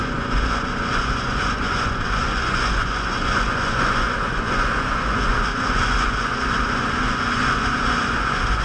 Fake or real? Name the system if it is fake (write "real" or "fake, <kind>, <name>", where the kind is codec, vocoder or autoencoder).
fake, vocoder, Vocos